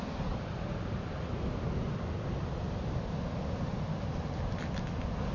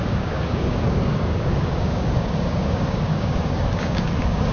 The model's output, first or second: second